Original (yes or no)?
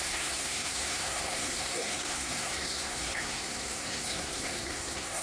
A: no